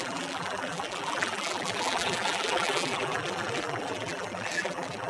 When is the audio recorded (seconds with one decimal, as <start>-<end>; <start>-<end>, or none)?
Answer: none